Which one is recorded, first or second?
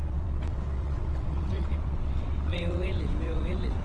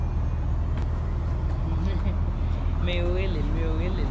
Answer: second